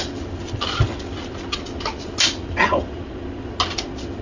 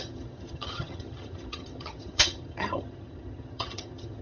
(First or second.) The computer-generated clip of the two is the second